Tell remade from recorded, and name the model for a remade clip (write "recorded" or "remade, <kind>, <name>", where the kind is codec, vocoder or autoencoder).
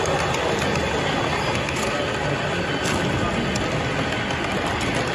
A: recorded